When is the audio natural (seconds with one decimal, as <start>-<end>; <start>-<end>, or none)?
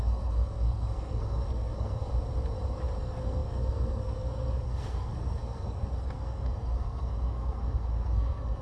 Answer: 2.1-3.0